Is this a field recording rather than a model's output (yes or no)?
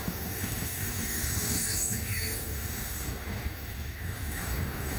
no